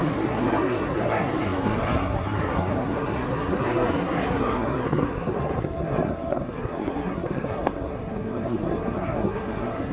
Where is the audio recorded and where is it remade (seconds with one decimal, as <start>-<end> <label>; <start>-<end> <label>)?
0.0-9.9 remade